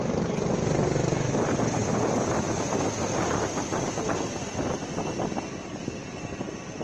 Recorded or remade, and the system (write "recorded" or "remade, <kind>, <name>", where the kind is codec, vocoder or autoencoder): recorded